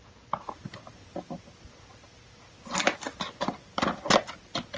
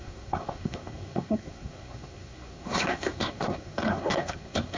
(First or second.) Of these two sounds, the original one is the first